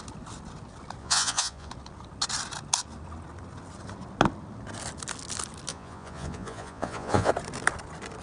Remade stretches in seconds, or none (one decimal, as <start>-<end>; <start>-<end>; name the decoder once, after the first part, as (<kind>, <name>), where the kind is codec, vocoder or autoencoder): 1.0-1.7 (vocoder, Vocos); 5.7-7.3